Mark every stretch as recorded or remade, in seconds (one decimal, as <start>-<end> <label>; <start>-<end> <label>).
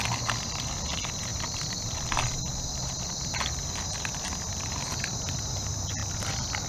0.0-6.7 recorded